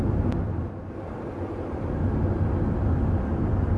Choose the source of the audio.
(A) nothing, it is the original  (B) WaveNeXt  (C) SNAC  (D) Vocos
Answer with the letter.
A